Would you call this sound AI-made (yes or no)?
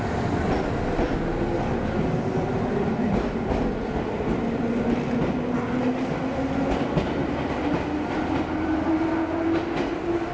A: no